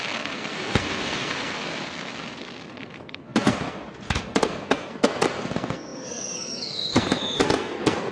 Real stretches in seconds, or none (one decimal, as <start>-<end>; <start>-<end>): none